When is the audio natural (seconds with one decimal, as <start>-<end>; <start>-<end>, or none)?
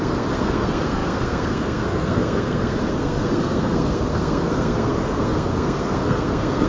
none